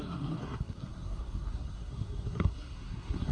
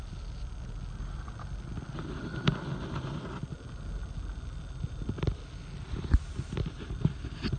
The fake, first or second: first